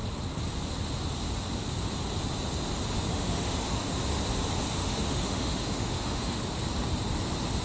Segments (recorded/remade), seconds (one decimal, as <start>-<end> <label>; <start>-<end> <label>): 0.0-3.1 recorded; 3.1-3.9 remade; 3.9-4.8 recorded; 4.8-6.4 remade; 6.4-7.6 recorded